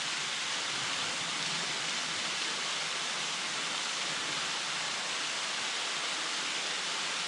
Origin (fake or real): real